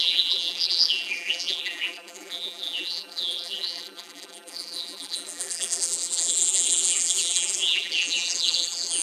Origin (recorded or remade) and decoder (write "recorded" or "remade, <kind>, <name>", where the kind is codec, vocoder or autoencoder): remade, vocoder, BigVGAN v2